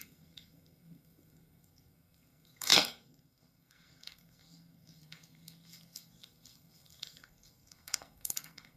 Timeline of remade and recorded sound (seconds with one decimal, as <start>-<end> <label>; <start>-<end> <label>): 0.0-8.8 remade